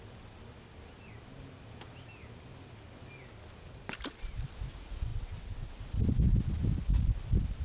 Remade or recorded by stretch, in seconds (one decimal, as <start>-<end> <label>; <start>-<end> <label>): 0.0-5.1 recorded; 5.1-5.7 remade; 5.7-7.6 recorded